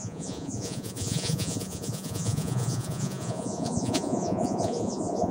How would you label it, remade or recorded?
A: remade